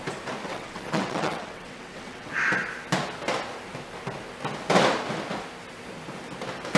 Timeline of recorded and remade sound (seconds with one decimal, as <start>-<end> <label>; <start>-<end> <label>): 0.0-0.5 recorded; 0.5-2.3 remade; 2.3-6.8 recorded